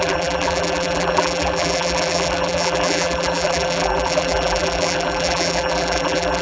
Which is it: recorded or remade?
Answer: remade